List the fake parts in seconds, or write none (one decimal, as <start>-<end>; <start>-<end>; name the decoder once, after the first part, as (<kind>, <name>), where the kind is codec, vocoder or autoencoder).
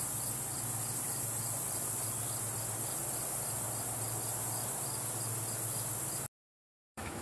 6.5-7.2 (autoencoder, DAC-VAE)